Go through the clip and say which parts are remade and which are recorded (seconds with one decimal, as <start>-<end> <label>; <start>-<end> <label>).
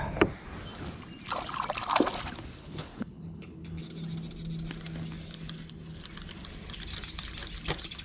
0.0-2.6 recorded; 2.6-3.8 remade; 3.8-8.0 recorded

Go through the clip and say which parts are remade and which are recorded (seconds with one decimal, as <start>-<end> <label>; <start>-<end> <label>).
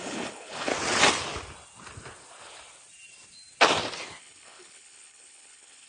0.0-0.7 remade; 0.7-4.2 recorded; 4.2-5.9 remade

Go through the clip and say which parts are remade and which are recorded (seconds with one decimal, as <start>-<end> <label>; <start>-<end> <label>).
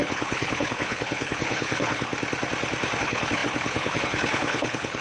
0.0-2.1 remade; 2.1-3.0 recorded; 3.0-5.0 remade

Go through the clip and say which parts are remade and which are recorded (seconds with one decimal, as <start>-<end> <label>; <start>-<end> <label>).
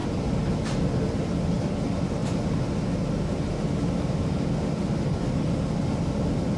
0.0-6.6 recorded